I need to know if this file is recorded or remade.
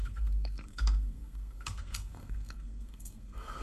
remade